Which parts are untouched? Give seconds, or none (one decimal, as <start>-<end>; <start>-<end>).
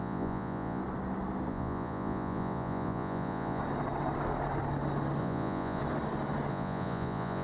0.8-1.5; 3.6-5.2; 5.8-6.5